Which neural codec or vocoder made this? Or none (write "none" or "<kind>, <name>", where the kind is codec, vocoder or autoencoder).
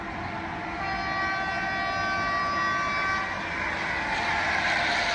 none